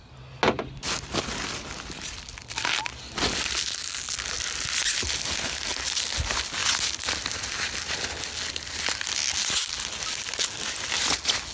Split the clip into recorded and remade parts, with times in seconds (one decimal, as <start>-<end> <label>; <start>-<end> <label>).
0.0-11.5 recorded